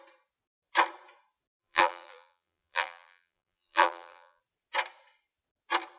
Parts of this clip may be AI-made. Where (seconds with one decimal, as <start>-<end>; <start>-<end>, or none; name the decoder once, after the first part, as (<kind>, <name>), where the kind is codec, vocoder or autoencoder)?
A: 1.6-4.4 (vocoder, BigVGAN v2)